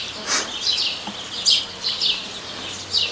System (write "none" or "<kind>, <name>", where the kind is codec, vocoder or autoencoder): none